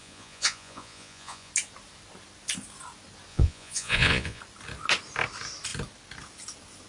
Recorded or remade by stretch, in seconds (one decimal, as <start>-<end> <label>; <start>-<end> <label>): 0.0-1.5 remade; 1.5-3.3 recorded; 3.3-4.4 remade; 4.4-6.9 recorded

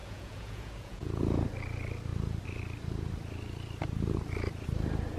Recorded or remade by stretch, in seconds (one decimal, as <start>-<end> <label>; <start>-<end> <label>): 0.0-1.1 remade; 1.1-5.2 recorded

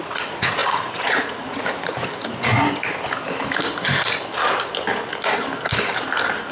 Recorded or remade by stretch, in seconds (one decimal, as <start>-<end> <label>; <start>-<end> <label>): 0.0-2.5 remade; 2.5-6.5 recorded

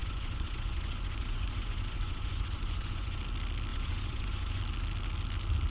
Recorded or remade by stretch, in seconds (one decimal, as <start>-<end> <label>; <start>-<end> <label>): 0.0-3.2 remade; 3.2-3.7 recorded; 3.7-4.6 remade; 4.6-5.7 recorded

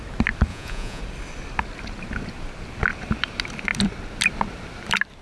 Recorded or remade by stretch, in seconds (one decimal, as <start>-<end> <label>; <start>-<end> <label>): 0.0-0.5 recorded; 0.5-1.0 remade; 1.0-5.2 recorded

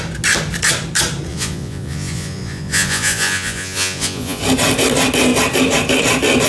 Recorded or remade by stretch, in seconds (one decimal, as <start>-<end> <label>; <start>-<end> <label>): 0.0-1.3 recorded; 1.3-4.4 remade; 4.4-6.5 recorded

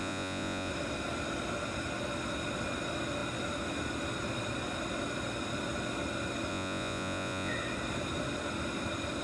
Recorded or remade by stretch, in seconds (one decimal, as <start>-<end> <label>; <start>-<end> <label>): 0.0-0.7 remade; 0.7-6.5 recorded; 6.5-7.5 remade; 7.5-9.2 recorded

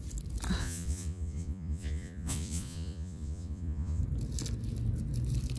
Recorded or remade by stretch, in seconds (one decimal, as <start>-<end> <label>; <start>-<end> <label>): 0.0-0.6 recorded; 0.6-4.0 remade; 4.0-5.6 recorded